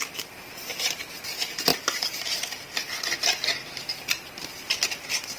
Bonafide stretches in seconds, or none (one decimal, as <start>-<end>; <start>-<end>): 0.0-5.4